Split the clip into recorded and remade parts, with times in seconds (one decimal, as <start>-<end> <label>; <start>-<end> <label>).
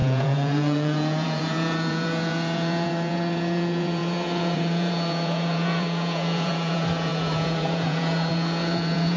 0.0-9.2 remade